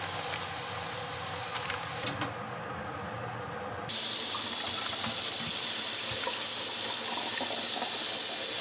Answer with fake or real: real